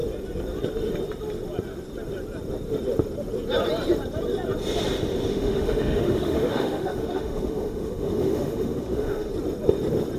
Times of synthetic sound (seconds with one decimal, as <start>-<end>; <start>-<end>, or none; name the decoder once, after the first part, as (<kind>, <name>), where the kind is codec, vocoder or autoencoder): 5.3-9.3 (autoencoder, DAC-VAE)